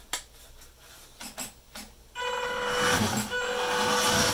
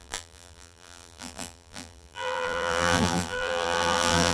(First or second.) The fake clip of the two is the second